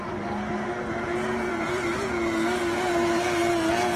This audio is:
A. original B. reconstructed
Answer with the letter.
B